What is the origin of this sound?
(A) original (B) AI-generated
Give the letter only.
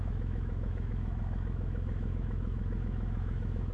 B